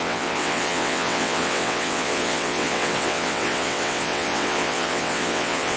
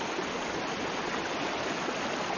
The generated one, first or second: first